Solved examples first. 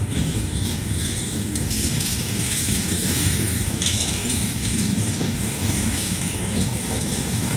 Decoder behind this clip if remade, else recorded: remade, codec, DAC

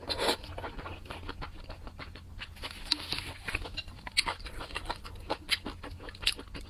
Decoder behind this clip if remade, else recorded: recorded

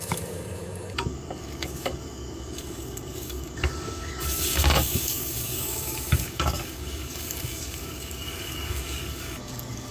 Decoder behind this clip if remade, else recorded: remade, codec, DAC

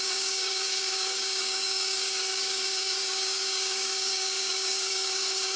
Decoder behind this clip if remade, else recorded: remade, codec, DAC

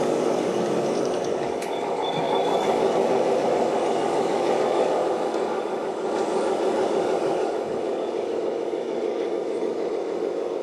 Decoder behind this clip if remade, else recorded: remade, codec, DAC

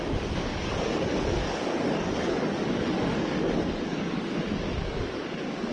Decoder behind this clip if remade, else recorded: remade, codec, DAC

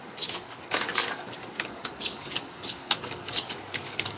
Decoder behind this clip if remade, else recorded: remade, codec, DAC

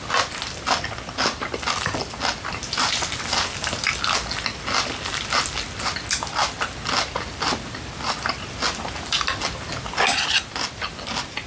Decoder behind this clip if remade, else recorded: recorded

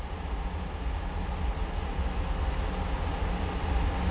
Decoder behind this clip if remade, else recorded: recorded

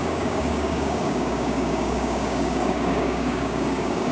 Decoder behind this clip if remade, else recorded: remade, codec, DAC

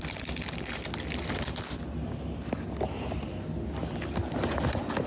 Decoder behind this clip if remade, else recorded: recorded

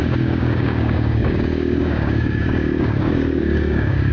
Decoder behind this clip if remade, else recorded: remade, codec, DAC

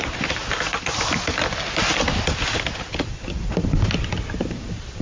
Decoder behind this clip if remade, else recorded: recorded